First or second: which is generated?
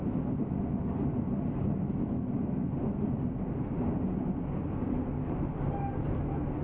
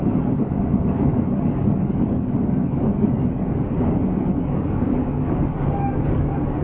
second